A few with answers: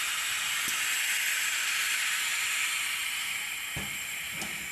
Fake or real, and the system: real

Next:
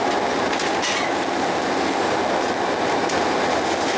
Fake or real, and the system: real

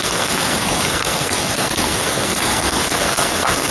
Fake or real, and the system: fake, codec, SNAC